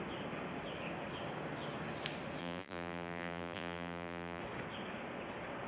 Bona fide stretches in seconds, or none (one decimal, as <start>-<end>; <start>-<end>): 0.0-2.4; 4.4-5.7